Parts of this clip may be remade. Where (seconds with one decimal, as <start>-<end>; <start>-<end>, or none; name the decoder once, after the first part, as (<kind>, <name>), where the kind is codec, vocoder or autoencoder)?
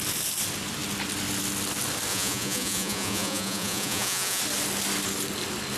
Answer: 2.1-4.4 (vocoder, Vocos)